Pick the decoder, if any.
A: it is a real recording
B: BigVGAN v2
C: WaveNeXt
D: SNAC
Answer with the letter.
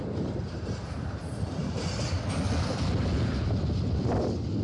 A